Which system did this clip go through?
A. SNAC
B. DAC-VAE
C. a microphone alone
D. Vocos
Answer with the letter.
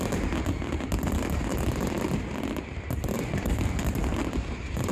C